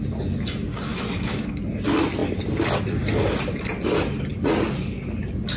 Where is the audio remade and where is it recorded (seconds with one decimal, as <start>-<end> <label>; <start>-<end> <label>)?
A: 0.0-0.9 recorded; 0.9-1.6 remade; 1.6-5.6 recorded